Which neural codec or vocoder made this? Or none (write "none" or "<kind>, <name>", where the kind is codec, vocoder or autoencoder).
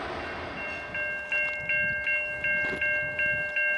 none